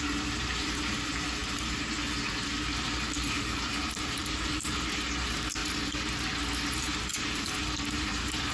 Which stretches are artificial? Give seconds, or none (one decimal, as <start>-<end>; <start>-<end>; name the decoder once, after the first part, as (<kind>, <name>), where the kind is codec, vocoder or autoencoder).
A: 0.0-5.6 (vocoder, BigVGAN v2); 6.8-8.5